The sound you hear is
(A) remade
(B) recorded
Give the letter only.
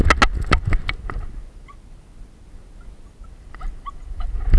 B